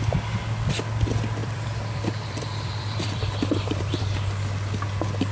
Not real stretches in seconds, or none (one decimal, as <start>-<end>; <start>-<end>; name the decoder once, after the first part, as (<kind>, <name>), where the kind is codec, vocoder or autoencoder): 1.4-4.0 (vocoder, BigVGAN v2)